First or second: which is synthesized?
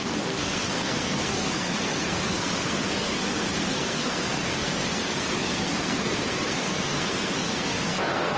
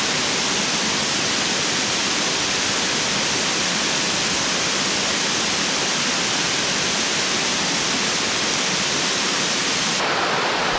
first